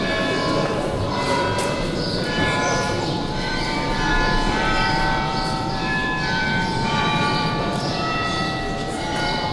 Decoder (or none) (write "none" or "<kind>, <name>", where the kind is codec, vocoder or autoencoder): vocoder, BigVGAN v2